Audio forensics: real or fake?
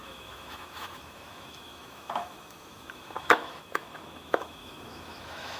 fake